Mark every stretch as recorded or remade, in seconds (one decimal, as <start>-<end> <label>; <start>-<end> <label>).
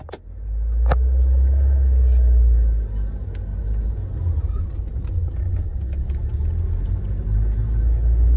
0.0-8.4 recorded